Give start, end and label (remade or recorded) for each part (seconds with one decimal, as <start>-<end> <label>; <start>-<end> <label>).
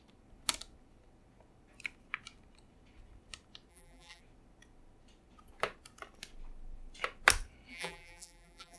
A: 0.0-3.7 recorded; 3.7-4.2 remade; 4.2-7.7 recorded; 7.7-8.8 remade